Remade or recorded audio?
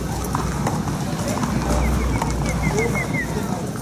recorded